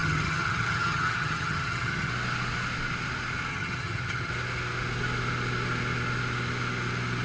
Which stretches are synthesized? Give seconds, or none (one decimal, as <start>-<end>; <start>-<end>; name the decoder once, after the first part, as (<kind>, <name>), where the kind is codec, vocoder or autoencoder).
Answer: 0.0-2.1 (vocoder, HiFi-GAN); 3.5-4.3